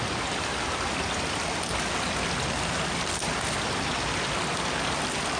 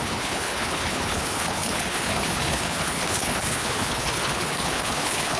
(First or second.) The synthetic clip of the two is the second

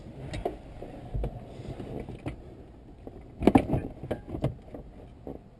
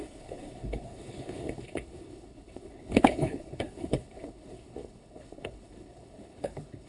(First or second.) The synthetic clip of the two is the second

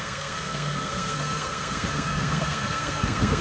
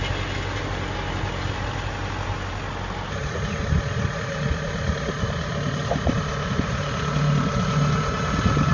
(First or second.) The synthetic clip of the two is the first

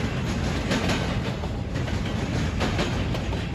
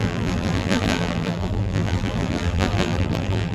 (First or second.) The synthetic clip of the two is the second